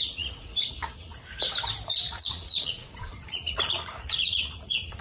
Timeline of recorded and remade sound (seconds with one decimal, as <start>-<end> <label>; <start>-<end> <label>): 0.0-1.1 remade; 1.1-1.9 recorded; 1.9-5.0 remade